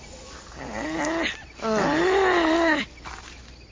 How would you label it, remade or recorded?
recorded